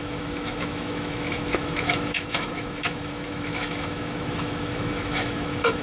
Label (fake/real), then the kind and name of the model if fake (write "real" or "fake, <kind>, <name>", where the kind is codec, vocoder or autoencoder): fake, autoencoder, DAC-VAE